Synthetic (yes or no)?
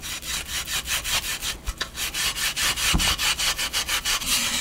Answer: no